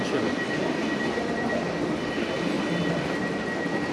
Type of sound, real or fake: real